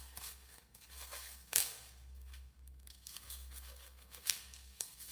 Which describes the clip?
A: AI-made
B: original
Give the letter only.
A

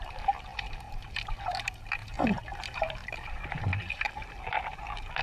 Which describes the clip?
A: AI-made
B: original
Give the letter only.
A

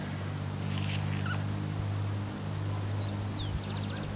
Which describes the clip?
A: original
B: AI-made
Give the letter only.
A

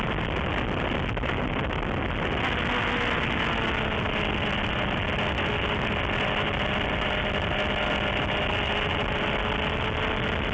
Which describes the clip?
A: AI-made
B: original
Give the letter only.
B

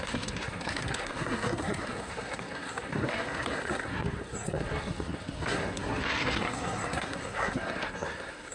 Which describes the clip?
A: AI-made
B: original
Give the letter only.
A